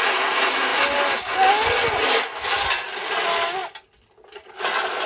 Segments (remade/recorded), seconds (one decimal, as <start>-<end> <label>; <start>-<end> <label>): 0.0-5.1 recorded